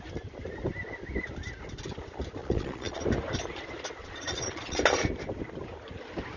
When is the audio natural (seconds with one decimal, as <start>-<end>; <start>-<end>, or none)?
0.0-2.4; 3.0-4.0; 4.8-6.4